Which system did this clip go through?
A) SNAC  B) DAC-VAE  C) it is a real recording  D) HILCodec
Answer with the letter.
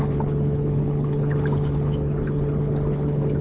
D